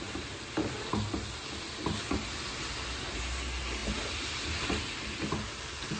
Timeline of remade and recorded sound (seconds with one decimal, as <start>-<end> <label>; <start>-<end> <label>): 0.0-6.0 recorded